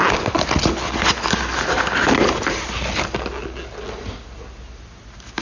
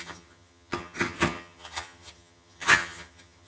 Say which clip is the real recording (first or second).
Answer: first